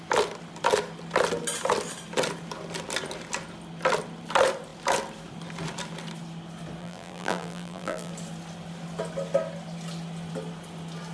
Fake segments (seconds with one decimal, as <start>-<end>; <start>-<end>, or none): 6.8-8.1